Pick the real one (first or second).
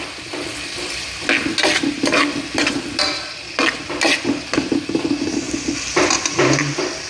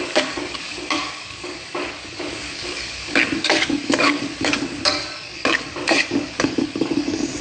first